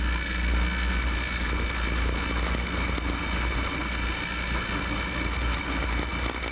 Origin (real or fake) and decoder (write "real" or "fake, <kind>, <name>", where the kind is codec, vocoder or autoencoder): real